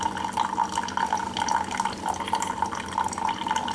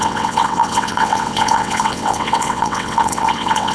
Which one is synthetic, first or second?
second